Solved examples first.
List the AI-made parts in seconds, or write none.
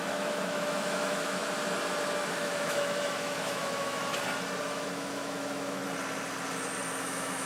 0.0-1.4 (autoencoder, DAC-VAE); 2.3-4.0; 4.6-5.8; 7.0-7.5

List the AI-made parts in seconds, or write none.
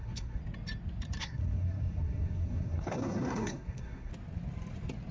0.0-0.4 (codec, SNAC); 1.2-4.1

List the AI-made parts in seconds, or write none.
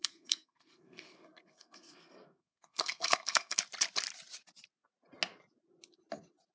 0.0-3.6 (codec, SNAC)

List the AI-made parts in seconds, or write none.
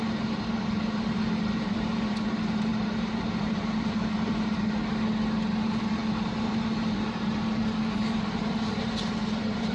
0.0-4.8 (vocoder, BigVGAN v2); 5.6-9.7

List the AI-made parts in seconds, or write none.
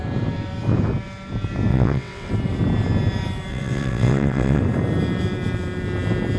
1.7-2.3 (vocoder, WaveNeXt); 3.5-4.6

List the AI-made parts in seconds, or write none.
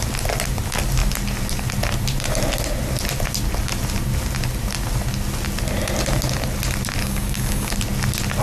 7.0-7.7 (codec, DAC)